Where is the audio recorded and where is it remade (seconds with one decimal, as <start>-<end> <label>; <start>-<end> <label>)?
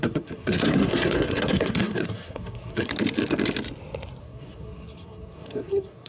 0.0-2.9 remade; 2.9-4.2 recorded; 4.2-6.1 remade